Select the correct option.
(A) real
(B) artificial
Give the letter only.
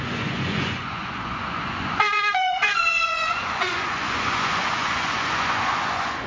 B